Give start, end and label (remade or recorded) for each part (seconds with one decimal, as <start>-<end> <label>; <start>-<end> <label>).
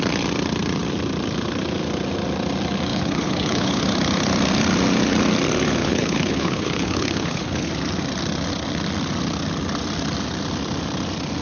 0.0-2.9 recorded; 2.9-3.8 remade; 3.8-5.8 recorded; 5.8-7.7 remade; 7.7-11.4 recorded